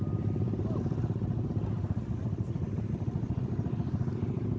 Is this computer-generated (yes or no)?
no